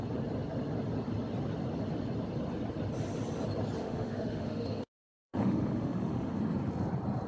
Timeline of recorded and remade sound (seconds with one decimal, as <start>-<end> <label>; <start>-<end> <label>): 0.0-3.8 recorded; 3.8-6.4 remade; 6.4-7.3 recorded